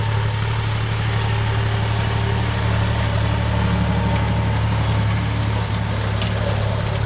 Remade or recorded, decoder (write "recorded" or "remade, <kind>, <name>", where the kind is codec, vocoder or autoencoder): recorded